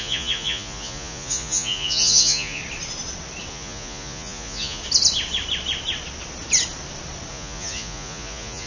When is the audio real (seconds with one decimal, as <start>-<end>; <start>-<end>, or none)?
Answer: 2.6-3.5; 4.8-7.3